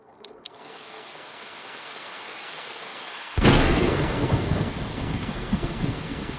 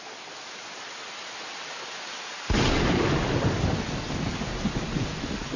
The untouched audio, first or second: second